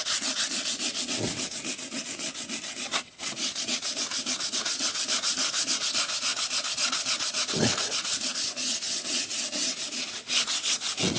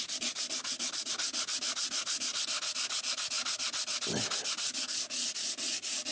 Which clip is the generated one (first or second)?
first